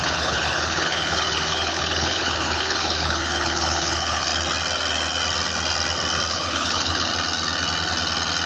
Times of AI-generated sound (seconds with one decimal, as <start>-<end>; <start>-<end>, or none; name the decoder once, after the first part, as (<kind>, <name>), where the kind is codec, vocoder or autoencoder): 0.0-4.3 (codec, HILCodec); 6.3-7.1